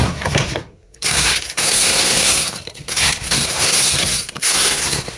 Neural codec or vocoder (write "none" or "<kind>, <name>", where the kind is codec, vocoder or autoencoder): codec, SNAC